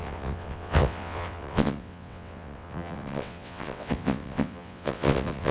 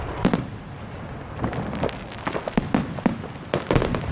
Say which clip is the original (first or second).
second